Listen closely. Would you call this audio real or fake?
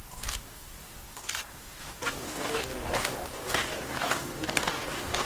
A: fake